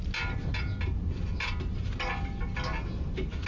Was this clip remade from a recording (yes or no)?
no